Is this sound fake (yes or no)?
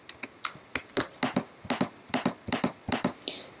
no